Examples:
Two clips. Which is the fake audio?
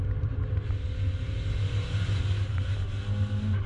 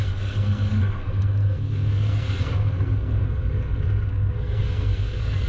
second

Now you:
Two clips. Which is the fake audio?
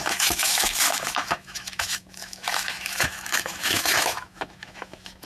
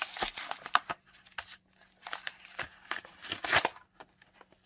first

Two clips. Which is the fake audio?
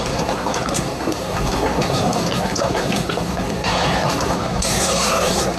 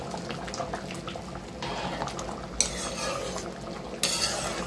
first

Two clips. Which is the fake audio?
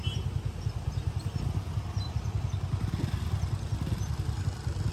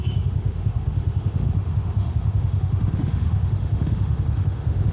second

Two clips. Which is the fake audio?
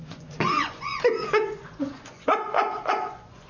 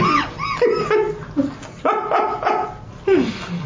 first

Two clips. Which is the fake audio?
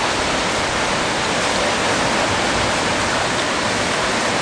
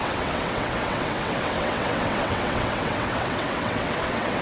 second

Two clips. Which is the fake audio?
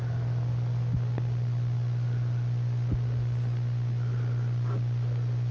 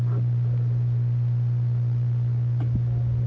second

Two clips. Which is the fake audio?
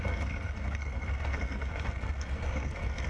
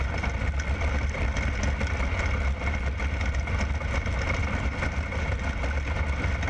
first